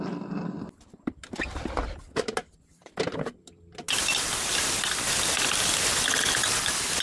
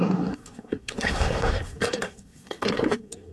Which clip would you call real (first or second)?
first